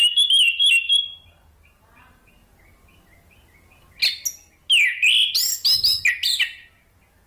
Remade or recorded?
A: recorded